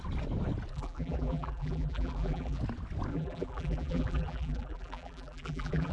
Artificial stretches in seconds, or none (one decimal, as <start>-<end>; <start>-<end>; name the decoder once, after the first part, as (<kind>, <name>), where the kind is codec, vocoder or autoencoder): 0.7-2.6 (vocoder, BigVGAN v2); 3.1-5.9